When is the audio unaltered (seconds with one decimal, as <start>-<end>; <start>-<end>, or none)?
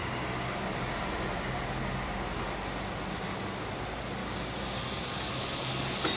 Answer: 0.9-4.2; 4.8-6.2